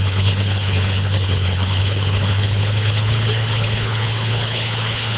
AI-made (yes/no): yes